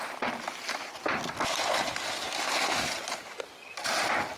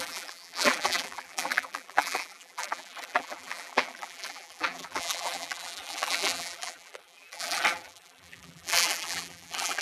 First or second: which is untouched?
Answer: first